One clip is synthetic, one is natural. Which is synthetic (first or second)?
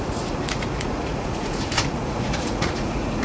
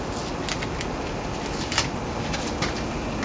first